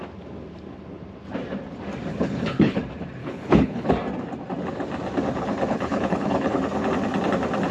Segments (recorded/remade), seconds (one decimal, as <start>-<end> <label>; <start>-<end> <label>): 0.0-2.1 recorded; 2.1-2.8 remade; 2.8-3.2 recorded; 3.2-3.9 remade; 3.9-5.7 recorded; 5.7-6.6 remade; 6.6-7.7 recorded